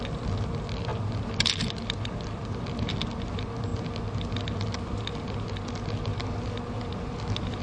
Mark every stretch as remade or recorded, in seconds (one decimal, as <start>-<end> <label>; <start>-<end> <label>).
0.0-7.6 recorded